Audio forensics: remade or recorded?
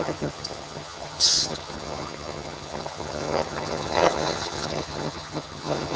remade